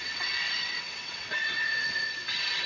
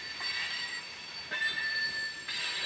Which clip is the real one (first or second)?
second